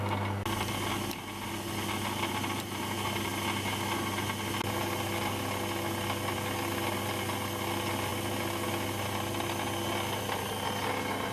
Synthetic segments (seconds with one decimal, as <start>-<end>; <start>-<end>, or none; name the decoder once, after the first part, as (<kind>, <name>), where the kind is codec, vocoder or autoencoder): none